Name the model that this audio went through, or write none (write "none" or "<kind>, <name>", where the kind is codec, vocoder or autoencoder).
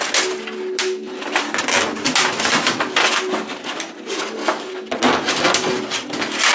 none